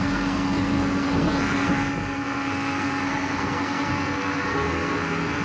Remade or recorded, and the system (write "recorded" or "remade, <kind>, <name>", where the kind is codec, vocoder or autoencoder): remade, codec, SNAC